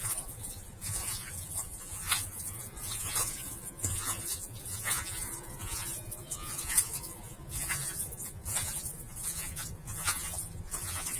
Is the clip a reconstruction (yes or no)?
yes